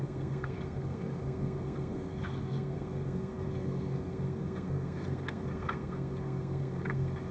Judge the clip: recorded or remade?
remade